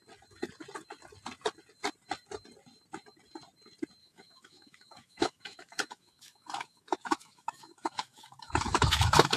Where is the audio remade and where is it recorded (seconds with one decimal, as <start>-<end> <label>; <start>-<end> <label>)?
0.0-4.0 recorded; 4.0-9.4 remade